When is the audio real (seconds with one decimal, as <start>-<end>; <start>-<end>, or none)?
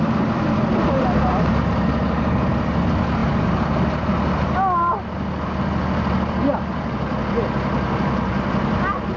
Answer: 0.0-9.2